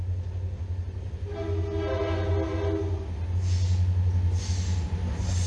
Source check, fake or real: real